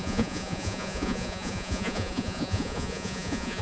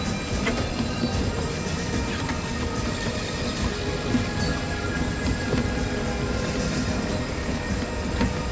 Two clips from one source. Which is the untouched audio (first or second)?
second